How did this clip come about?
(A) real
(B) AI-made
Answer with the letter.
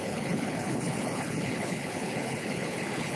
B